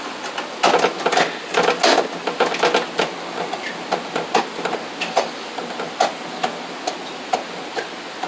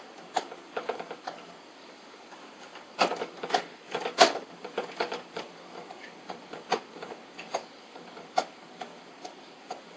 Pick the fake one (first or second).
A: second